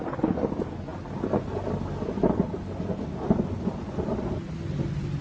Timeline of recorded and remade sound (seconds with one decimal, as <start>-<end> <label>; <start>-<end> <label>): 0.0-5.2 recorded